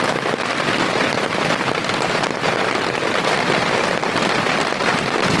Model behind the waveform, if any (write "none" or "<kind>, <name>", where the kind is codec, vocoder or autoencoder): none